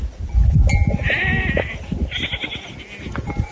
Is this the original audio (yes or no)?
yes